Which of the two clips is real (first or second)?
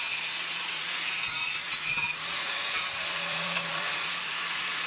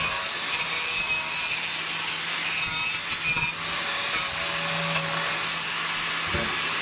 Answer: second